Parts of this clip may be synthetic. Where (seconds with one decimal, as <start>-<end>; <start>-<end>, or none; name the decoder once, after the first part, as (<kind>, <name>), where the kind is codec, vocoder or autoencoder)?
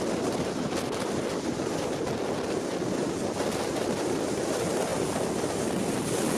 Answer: none